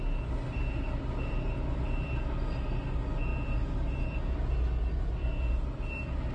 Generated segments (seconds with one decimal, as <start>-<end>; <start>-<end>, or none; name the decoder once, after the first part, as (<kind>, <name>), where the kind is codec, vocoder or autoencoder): none